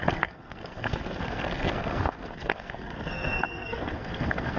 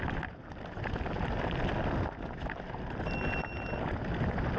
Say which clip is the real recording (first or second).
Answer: second